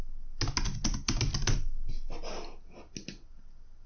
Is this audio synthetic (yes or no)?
no